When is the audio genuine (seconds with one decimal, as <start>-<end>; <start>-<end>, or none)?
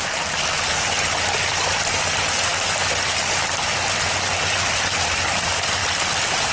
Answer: 0.0-6.5